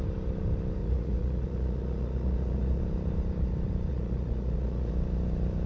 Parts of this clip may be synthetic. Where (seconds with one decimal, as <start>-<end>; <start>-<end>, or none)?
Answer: 0.8-2.8; 3.9-4.9